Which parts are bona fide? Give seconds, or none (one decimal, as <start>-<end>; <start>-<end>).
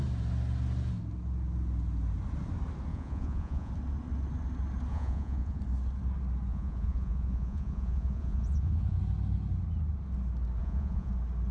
0.0-2.9; 3.7-4.9; 5.6-6.5; 9.0-10.6; 11.1-11.5